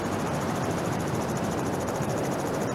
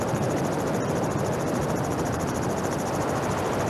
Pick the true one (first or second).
second